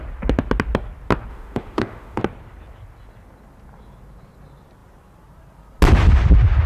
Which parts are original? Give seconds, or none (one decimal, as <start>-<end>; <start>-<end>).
0.0-1.3; 2.2-6.7